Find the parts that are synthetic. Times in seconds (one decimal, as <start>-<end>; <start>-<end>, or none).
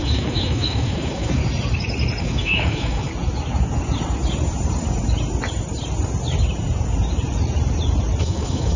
0.0-1.4; 2.2-3.1; 8.2-8.8